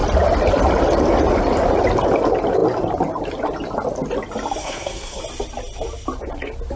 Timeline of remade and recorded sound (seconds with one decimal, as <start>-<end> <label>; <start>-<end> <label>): 0.0-4.6 recorded; 4.6-5.2 remade; 5.2-6.8 recorded